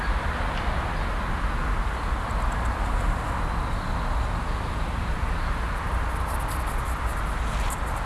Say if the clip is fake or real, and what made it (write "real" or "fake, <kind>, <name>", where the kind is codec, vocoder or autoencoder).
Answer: real